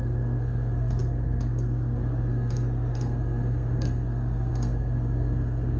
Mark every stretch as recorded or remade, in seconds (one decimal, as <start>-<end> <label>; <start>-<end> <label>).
0.0-5.8 remade